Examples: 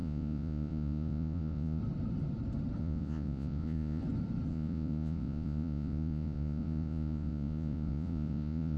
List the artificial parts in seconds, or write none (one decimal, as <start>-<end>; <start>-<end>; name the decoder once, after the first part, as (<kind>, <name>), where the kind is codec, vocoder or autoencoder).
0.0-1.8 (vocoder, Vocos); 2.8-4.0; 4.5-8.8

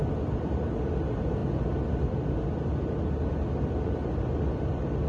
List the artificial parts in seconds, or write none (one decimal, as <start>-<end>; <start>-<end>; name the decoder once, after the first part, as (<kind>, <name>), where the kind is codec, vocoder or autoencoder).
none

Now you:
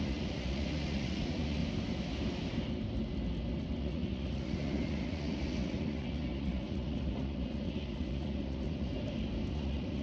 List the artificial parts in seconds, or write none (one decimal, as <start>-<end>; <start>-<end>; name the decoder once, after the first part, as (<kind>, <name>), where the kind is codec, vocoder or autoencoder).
0.0-1.6 (vocoder, Vocos); 3.8-8.9; 9.5-10.0

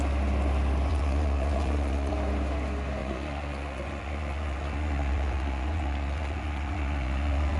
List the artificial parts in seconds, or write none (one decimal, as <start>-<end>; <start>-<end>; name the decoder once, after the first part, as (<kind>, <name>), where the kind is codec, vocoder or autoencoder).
0.9-2.1 (vocoder, Vocos); 3.0-7.6